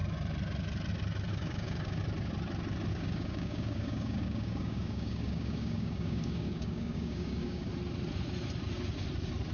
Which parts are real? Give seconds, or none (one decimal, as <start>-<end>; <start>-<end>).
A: 0.0-1.3; 2.0-2.9; 7.7-9.5